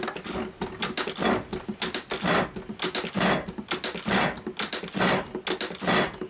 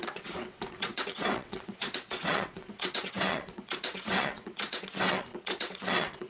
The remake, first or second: second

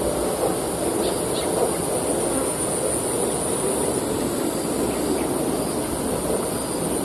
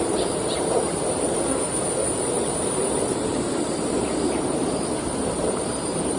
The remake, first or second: second